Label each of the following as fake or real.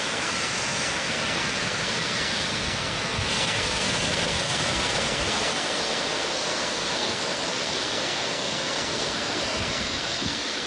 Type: fake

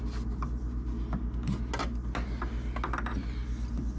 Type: real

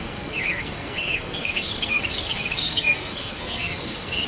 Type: fake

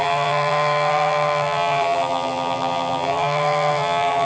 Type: fake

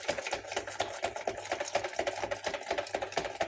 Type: real